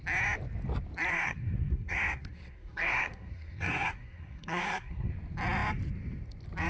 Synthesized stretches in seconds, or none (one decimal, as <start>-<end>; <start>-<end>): 1.1-5.1